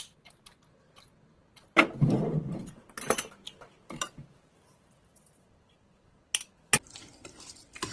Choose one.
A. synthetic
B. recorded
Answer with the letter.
B